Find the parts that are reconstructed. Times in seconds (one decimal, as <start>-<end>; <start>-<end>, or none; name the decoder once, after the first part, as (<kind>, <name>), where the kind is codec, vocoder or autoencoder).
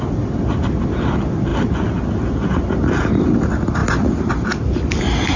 none